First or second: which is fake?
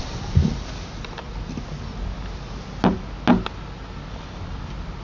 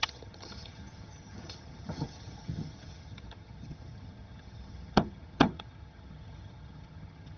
second